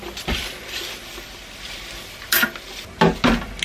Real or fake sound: real